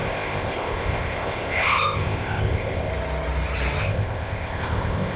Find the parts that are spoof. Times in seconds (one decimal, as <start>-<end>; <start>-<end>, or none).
0.0-2.9; 3.8-5.2